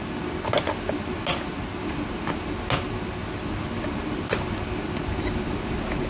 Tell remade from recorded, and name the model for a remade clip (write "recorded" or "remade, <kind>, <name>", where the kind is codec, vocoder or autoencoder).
recorded